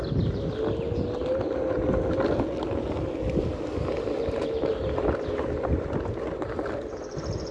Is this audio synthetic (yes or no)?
no